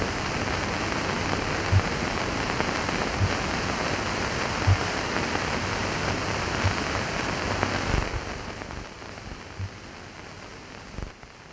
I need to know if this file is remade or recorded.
recorded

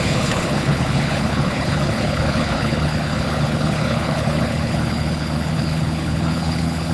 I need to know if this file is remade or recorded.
remade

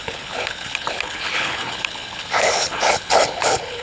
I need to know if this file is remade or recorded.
remade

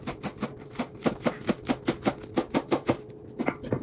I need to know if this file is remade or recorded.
recorded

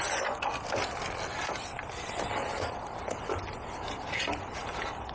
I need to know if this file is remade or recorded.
recorded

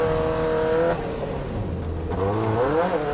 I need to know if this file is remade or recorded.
recorded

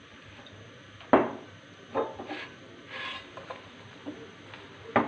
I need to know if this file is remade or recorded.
recorded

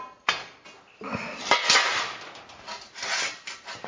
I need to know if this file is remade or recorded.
recorded